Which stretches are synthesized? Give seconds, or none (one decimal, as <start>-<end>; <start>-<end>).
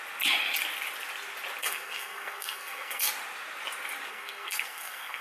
1.6-3.1; 4.1-5.2